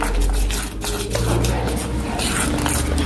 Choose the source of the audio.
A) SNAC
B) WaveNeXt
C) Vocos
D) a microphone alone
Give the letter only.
D